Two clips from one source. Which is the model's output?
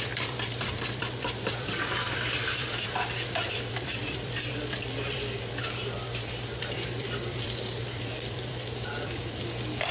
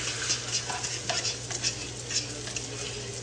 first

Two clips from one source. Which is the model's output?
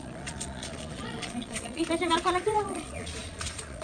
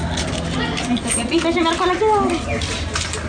first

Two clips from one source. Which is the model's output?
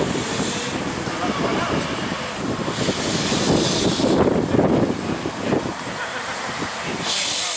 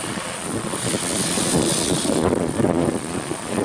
second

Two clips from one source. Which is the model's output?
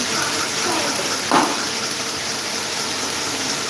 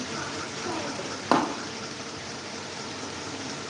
second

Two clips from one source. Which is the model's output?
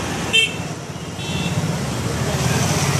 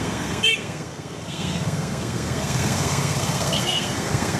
second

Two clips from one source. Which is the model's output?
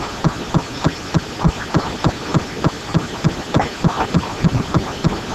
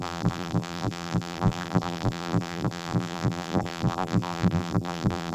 second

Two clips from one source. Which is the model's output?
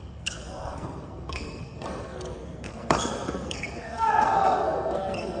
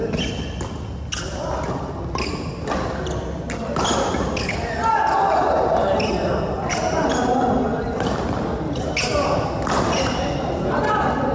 first